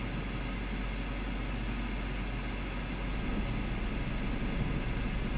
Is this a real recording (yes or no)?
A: yes